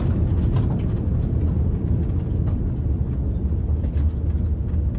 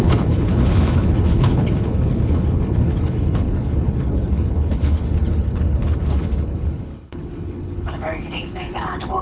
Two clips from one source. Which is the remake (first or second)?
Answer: second